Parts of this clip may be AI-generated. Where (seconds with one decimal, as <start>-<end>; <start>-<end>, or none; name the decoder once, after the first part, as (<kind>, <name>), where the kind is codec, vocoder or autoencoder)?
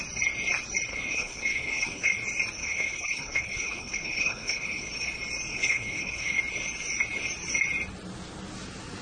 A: 0.9-2.1 (codec, HILCodec); 2.6-4.9; 5.5-6.4